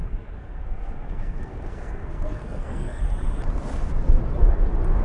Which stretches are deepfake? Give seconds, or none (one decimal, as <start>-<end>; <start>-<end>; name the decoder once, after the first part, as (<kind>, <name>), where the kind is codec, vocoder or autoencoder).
0.0-3.0 (codec, SNAC)